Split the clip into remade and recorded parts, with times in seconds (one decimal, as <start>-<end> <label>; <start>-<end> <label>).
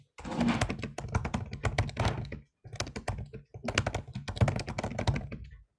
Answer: 0.0-5.8 recorded